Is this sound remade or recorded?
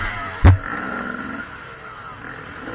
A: recorded